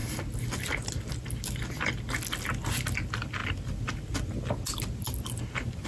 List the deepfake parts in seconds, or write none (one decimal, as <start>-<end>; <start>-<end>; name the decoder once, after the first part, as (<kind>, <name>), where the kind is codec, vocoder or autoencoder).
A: none